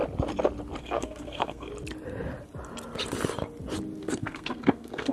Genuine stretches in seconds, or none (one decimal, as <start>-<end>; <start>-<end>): 0.0-0.8; 1.7-4.0